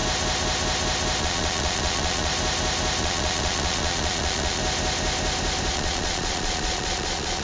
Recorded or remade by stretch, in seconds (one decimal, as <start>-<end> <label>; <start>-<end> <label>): 0.0-1.2 recorded; 1.2-2.3 remade; 2.3-3.0 recorded; 3.0-4.6 remade; 4.6-5.7 recorded; 5.7-7.4 remade